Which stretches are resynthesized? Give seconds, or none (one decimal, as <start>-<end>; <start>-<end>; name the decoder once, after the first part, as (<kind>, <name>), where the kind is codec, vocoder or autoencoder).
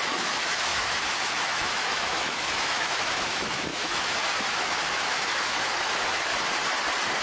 0.0-6.3 (autoencoder, DAC-VAE)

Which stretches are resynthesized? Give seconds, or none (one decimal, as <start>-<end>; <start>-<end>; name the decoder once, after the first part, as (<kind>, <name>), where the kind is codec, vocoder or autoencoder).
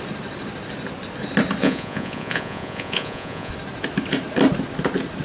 1.6-3.5 (vocoder, Vocos)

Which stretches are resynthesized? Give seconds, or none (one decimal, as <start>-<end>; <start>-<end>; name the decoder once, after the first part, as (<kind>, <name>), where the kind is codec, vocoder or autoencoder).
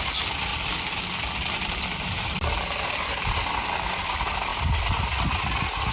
0.5-3.7 (vocoder, BigVGAN v2); 4.5-5.4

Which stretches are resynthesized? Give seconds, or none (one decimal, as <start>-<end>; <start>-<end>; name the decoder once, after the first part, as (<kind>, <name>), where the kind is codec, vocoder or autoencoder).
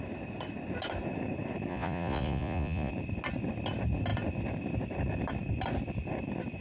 1.7-2.9 (vocoder, Vocos)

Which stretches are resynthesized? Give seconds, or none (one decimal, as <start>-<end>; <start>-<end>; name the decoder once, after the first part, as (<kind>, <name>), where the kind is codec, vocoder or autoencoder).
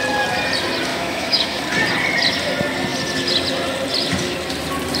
0.9-1.6 (autoencoder, DAC-VAE)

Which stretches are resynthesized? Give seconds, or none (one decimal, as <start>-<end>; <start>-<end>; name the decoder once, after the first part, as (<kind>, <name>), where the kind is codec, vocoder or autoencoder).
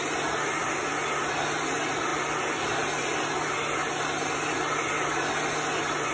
none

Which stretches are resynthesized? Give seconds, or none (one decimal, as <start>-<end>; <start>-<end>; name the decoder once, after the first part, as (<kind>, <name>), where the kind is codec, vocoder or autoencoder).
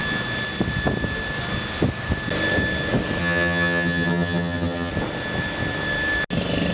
3.2-4.9 (vocoder, HiFi-GAN)